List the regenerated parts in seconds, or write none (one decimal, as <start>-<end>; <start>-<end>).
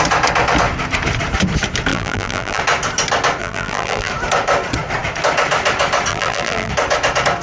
1.9-2.6; 3.4-4.1; 6.1-6.7